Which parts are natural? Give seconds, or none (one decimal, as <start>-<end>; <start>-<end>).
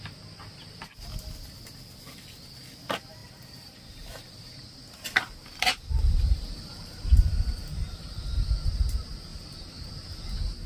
0.0-3.2; 8.1-9.3; 9.9-10.7